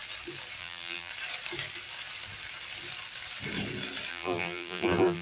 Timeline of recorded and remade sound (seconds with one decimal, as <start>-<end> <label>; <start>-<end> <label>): 0.0-0.6 recorded; 0.6-1.1 remade; 1.1-4.1 recorded; 4.1-5.2 remade